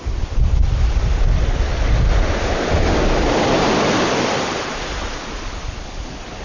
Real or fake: real